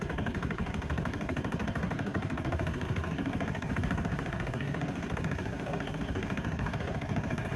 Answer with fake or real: fake